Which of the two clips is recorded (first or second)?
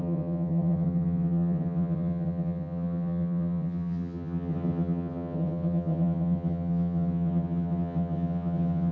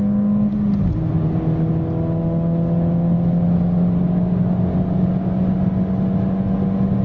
second